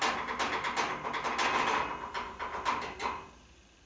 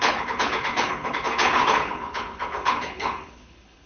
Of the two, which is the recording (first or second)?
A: first